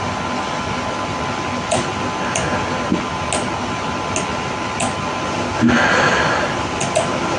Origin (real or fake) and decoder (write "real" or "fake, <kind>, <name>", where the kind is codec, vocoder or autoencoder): real